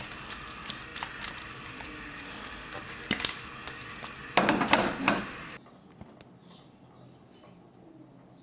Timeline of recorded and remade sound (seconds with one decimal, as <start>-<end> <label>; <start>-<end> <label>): 0.0-8.4 recorded